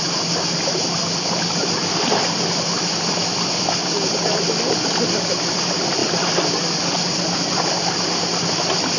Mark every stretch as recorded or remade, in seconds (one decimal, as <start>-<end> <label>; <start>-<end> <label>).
0.0-9.0 recorded